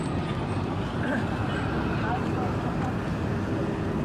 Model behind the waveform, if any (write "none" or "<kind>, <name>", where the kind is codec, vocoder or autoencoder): none